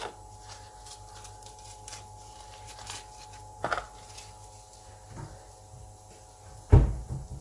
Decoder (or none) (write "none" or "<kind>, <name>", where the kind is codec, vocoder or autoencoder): none